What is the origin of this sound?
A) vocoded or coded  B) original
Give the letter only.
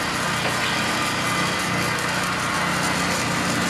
B